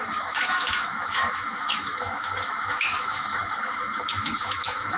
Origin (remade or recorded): remade